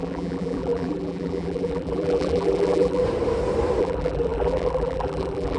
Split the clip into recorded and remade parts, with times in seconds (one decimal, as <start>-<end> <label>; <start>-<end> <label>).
0.0-3.0 remade; 3.0-3.8 recorded; 3.8-5.6 remade

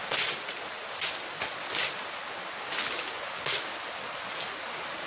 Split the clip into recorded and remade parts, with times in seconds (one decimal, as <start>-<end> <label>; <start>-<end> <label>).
0.0-5.1 recorded

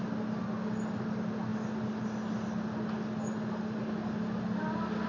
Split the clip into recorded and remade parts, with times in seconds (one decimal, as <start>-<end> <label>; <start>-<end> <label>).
0.0-5.1 recorded

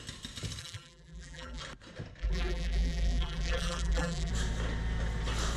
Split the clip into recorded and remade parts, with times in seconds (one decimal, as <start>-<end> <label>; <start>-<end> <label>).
0.0-0.6 recorded; 0.6-1.6 remade; 1.6-2.2 recorded; 2.2-4.3 remade; 4.3-5.6 recorded

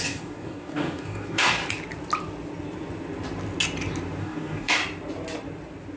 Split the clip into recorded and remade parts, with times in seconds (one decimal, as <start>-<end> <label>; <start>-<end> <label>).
0.0-1.6 remade; 1.6-4.2 recorded; 4.2-4.8 remade; 4.8-6.0 recorded

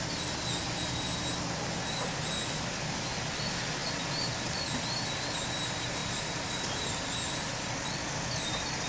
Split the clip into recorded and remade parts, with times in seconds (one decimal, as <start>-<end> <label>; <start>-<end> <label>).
0.0-3.8 recorded; 3.8-5.3 remade; 5.3-6.0 recorded; 6.0-8.5 remade; 8.5-8.9 recorded

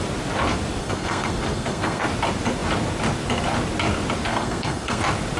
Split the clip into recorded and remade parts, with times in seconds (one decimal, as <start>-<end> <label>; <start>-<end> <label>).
0.0-0.8 recorded; 0.8-2.0 remade; 2.0-4.3 recorded; 4.3-5.0 remade; 5.0-5.4 recorded